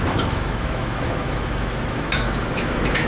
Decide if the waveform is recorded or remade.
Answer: remade